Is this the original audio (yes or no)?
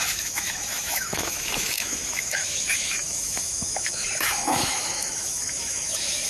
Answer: no